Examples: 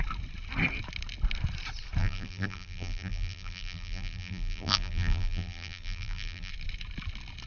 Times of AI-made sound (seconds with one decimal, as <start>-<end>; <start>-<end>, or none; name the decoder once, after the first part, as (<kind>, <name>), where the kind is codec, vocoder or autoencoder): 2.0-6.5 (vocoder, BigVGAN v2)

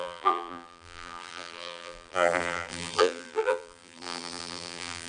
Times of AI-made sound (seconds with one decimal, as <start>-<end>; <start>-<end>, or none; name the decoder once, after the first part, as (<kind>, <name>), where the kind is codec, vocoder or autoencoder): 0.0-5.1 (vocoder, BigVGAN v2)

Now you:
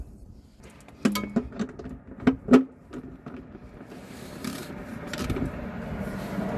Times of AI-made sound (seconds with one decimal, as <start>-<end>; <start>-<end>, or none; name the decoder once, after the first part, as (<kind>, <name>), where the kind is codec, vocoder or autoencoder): 0.0-0.5 (vocoder, BigVGAN v2); 3.1-6.6

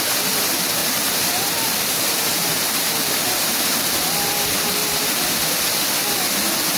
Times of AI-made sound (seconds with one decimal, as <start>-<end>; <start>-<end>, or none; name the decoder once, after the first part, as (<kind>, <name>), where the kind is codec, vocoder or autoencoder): 0.8-4.2 (vocoder, BigVGAN v2); 4.8-5.4

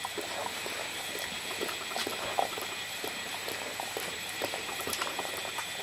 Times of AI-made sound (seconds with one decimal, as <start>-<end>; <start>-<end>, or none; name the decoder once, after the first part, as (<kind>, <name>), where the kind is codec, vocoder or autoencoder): 2.1-5.3 (vocoder, BigVGAN v2)

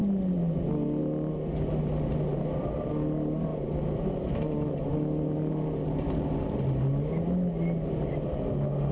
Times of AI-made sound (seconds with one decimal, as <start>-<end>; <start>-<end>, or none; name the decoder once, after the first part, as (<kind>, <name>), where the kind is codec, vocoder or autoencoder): 2.3-2.9 (vocoder, BigVGAN v2); 3.5-6.4